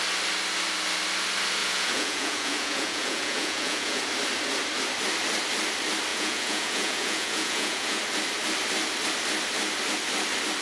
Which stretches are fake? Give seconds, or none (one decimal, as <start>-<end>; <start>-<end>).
1.6-4.0; 6.1-8.0